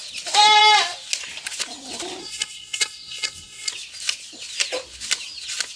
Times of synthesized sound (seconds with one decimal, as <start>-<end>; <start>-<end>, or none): 2.2-3.7